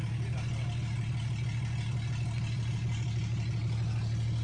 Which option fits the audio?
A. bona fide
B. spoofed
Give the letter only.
A